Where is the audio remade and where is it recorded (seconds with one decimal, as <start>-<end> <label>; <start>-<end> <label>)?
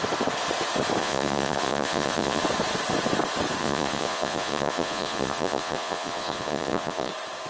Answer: 0.0-1.0 recorded; 1.0-2.4 remade; 2.4-3.6 recorded; 3.6-7.1 remade; 7.1-7.5 recorded